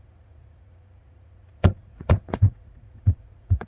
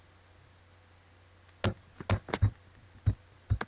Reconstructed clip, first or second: first